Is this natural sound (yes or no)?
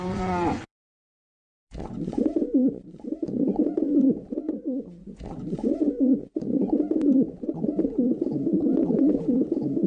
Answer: no